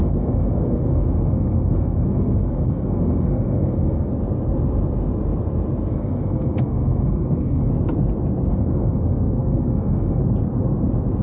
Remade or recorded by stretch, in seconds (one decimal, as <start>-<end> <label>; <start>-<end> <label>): 0.0-4.1 remade; 4.1-5.9 recorded; 5.9-7.7 remade; 7.7-8.5 recorded; 8.5-10.2 remade; 10.2-11.2 recorded